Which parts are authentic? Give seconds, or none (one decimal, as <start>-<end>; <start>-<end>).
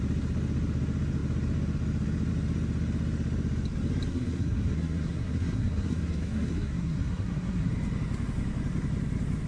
0.0-4.1; 7.7-9.5